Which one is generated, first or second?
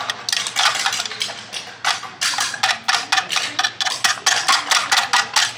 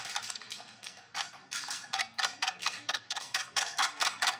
second